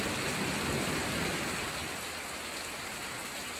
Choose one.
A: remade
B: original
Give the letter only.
B